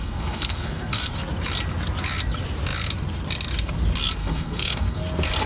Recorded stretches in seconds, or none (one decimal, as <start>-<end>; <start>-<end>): 1.1-4.2; 5.0-5.5